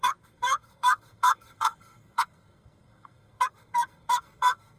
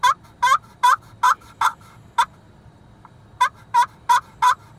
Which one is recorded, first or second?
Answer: second